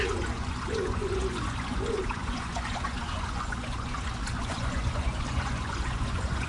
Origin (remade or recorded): remade